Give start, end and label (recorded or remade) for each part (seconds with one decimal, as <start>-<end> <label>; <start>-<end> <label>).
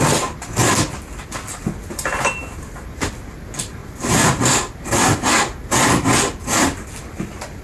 0.0-3.8 recorded; 3.8-5.7 remade; 5.7-7.6 recorded